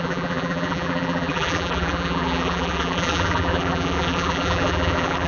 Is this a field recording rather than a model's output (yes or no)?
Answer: no